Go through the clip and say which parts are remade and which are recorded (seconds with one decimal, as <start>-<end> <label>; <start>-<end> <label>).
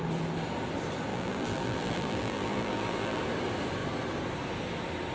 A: 0.0-1.1 recorded; 1.1-3.2 remade; 3.2-5.1 recorded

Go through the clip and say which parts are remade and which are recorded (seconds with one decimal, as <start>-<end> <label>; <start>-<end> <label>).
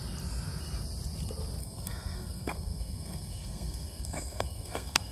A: 0.0-1.6 recorded; 1.6-5.1 remade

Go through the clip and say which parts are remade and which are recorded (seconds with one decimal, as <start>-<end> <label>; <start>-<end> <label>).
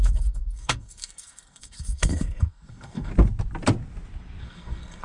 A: 0.0-3.1 remade; 3.1-4.4 recorded; 4.4-5.0 remade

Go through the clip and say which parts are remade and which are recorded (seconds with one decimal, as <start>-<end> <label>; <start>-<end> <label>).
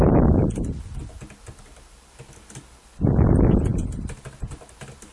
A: 0.0-5.1 recorded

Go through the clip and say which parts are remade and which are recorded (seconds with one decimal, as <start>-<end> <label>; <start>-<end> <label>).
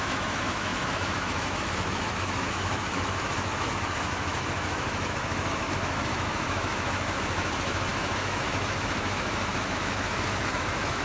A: 0.0-11.0 remade